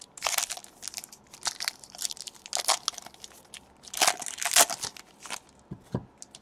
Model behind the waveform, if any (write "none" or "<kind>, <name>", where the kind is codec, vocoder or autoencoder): none